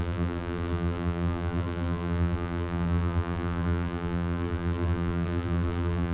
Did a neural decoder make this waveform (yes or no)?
yes